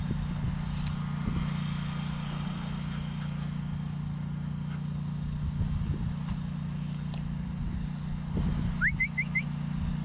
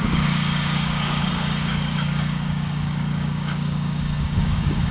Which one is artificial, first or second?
second